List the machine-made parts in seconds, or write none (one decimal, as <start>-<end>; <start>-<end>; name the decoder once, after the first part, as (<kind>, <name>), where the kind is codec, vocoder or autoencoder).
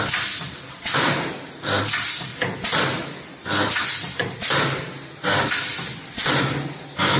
none